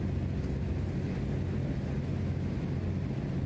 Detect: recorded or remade recorded